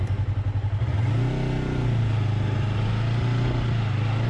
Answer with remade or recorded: recorded